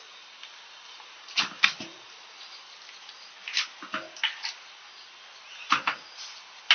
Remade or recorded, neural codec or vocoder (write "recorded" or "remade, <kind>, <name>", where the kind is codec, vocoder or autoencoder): recorded